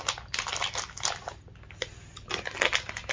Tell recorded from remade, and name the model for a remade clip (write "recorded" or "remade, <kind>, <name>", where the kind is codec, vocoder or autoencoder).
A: recorded